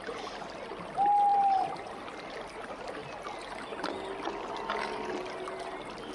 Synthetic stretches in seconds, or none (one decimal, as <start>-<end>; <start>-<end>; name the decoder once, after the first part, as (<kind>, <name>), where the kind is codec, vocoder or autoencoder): 1.3-1.9 (vocoder, BigVGAN v2)